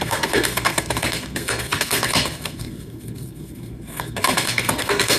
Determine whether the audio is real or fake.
fake